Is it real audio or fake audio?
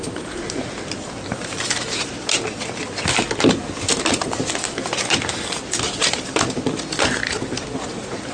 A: real